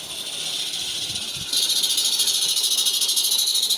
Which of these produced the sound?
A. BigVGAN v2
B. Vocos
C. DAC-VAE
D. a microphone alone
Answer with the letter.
D